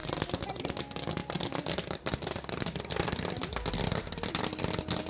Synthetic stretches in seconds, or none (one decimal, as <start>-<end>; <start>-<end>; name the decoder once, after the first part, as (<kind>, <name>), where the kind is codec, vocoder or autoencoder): none